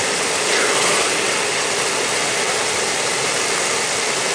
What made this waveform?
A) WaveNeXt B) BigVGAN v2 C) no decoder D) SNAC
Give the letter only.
C